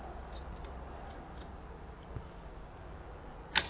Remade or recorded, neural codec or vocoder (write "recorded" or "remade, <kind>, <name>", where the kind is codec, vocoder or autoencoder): recorded